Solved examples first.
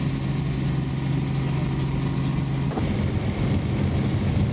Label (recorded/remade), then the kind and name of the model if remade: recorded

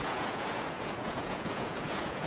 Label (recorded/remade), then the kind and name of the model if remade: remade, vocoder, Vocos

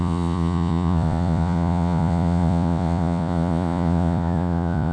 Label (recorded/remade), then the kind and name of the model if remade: remade, vocoder, Vocos